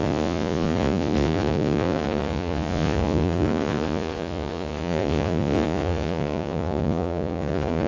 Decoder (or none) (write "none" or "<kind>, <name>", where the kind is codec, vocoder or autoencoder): vocoder, Vocos